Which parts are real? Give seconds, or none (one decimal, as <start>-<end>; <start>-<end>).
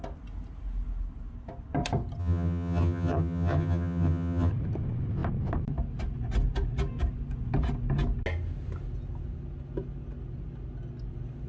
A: 0.0-2.2; 4.5-11.5